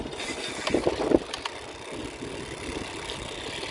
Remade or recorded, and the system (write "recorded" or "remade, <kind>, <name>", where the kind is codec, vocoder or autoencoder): recorded